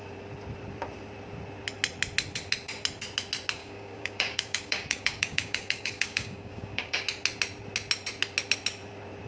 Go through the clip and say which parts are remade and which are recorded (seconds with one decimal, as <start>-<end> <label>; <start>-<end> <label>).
0.0-3.6 recorded; 3.6-7.0 remade; 7.0-9.3 recorded